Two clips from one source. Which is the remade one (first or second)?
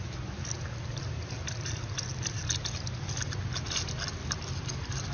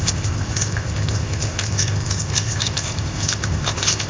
second